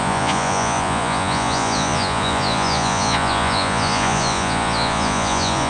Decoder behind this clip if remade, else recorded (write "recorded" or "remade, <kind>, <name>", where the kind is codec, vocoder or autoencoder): remade, vocoder, Vocos